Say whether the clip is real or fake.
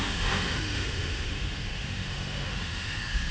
fake